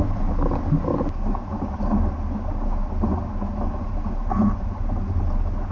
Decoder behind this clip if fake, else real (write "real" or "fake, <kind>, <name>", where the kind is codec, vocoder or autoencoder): real